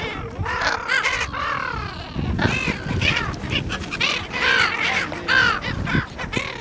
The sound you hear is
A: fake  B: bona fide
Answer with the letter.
B